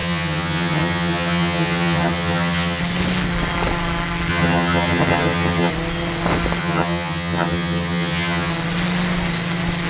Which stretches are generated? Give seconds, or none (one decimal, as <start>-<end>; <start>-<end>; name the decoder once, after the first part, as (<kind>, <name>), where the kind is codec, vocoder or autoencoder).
0.0-2.8 (vocoder, HiFi-GAN); 4.3-5.7; 6.6-8.5